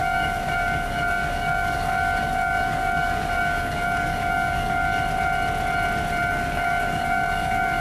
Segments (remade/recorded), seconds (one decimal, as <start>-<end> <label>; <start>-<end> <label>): 0.0-4.9 remade; 4.9-6.3 recorded; 6.3-7.8 remade